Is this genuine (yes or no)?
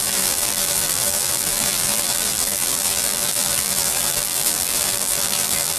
no